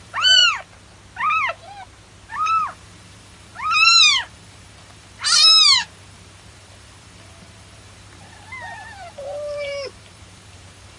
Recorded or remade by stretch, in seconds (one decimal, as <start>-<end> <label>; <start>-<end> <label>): 0.0-0.4 remade; 0.4-2.3 recorded; 2.3-11.0 remade